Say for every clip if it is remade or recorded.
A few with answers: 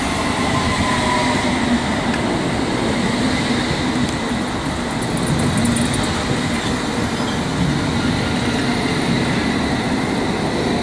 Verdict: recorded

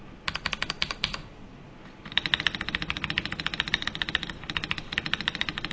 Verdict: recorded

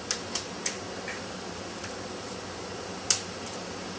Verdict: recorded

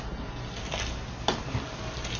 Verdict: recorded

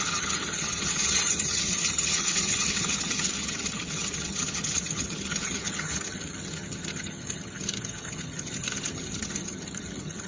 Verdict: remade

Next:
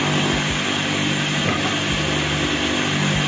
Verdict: recorded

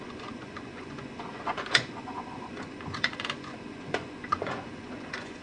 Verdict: remade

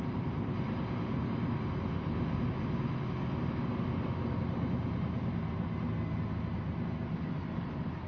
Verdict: recorded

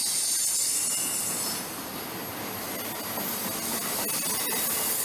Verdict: recorded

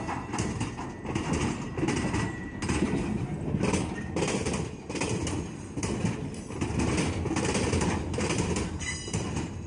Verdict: recorded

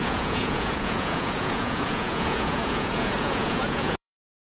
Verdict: remade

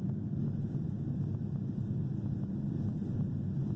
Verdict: recorded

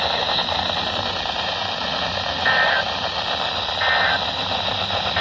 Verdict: recorded